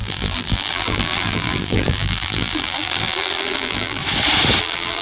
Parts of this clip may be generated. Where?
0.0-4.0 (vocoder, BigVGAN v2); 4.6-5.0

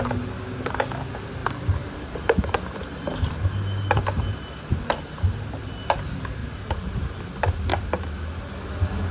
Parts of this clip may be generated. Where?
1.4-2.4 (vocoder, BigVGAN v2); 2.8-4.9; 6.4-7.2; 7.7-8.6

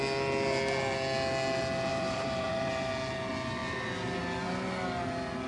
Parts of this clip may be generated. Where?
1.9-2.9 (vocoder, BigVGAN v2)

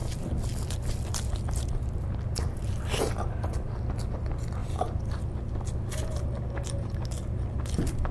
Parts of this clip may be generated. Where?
0.0-4.1 (vocoder, BigVGAN v2); 4.6-5.2

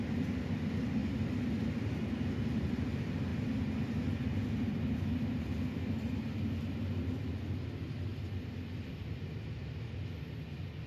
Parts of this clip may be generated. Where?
none

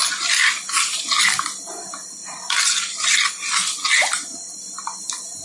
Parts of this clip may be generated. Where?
0.0-1.2 (vocoder, BigVGAN v2); 2.2-3.3; 4.3-5.0

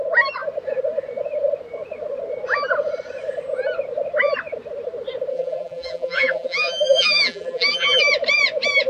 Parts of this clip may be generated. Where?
5.3-8.0 (vocoder, BigVGAN v2)

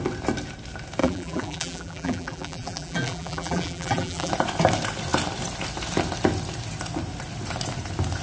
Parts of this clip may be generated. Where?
1.0-4.3 (vocoder, BigVGAN v2)